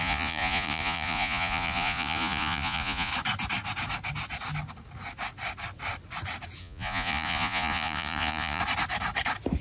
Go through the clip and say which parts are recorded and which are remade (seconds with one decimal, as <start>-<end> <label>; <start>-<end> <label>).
0.0-3.1 remade; 3.1-6.6 recorded; 6.6-8.6 remade; 8.6-9.6 recorded